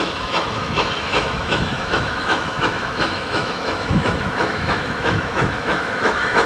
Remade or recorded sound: remade